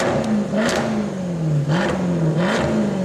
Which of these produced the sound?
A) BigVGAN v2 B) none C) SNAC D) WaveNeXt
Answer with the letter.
B